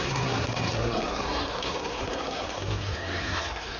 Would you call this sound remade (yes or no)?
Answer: yes